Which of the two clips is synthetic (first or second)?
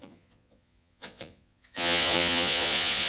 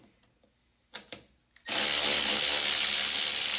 first